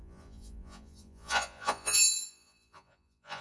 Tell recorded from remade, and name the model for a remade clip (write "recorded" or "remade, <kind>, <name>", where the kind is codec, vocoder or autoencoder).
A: remade, vocoder, Vocos